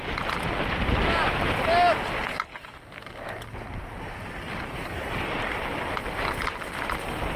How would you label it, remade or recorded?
recorded